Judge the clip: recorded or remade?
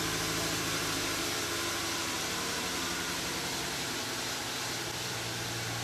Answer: remade